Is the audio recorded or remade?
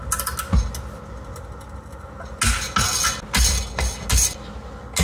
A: recorded